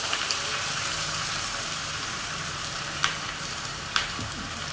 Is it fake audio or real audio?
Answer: fake